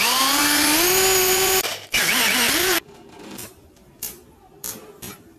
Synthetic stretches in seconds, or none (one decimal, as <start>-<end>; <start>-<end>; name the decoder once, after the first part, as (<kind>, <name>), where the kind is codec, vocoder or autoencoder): 0.0-0.4 (vocoder, BigVGAN v2); 1.2-5.4

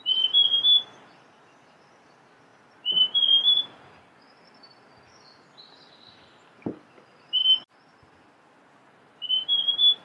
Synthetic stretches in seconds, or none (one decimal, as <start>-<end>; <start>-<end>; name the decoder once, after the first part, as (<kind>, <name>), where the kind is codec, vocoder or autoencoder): 2.5-5.0 (vocoder, BigVGAN v2)

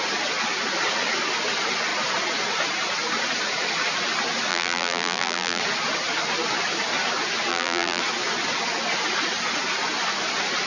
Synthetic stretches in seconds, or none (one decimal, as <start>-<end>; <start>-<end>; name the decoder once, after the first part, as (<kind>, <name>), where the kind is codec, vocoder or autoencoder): 4.5-5.6 (vocoder, BigVGAN v2); 7.5-8.0

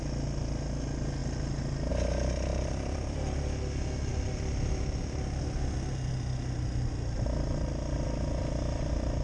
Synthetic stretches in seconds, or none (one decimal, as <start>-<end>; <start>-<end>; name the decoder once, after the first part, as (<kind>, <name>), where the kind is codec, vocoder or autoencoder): 2.5-3.4 (vocoder, BigVGAN v2); 4.1-5.4

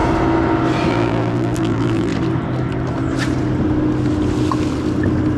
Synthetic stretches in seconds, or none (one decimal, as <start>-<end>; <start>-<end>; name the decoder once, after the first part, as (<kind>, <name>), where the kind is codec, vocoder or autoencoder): 0.9-2.1 (vocoder, BigVGAN v2)

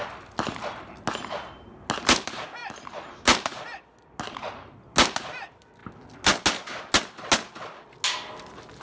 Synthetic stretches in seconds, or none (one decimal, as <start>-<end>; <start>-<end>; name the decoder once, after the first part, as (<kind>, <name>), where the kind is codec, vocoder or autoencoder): none

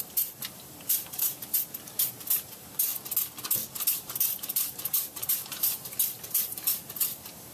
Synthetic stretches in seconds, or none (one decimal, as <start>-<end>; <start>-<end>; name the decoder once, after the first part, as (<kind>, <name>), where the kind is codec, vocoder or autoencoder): 0.0-2.9 (vocoder, BigVGAN v2); 3.9-7.5